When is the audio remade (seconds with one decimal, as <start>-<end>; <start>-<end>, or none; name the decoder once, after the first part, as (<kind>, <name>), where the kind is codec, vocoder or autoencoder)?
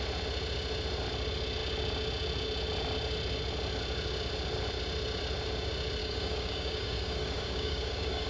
6.0-8.3 (codec, DAC)